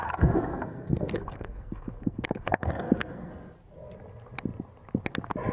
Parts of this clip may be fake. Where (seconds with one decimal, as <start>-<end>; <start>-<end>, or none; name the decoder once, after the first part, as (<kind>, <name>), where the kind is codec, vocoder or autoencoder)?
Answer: 0.0-3.3 (codec, SNAC)